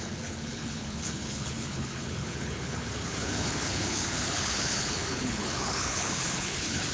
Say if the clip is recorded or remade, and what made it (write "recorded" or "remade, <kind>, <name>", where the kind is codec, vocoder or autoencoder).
remade, codec, HILCodec